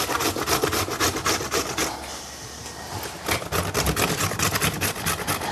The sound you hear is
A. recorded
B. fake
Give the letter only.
A